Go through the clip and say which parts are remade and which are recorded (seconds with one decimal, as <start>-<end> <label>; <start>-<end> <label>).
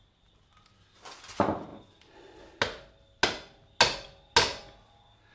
0.0-5.3 recorded